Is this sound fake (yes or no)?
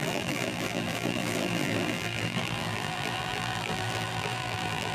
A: yes